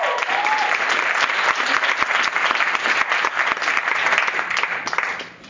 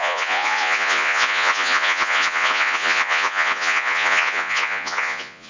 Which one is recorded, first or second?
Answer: first